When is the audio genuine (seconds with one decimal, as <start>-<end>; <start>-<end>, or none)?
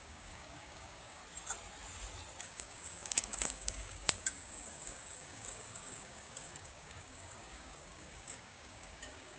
1.2-2.4